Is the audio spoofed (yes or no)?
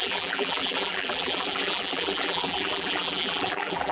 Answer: yes